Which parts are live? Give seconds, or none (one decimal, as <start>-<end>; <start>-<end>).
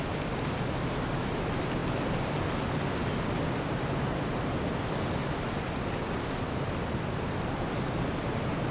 0.0-8.7